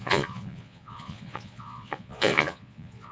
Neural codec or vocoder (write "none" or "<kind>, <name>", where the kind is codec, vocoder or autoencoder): vocoder, Vocos